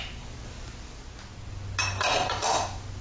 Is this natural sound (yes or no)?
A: yes